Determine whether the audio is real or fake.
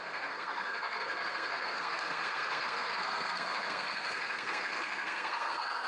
fake